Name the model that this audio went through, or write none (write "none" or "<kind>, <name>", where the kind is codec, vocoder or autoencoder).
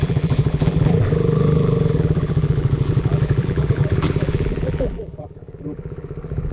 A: vocoder, BigVGAN v2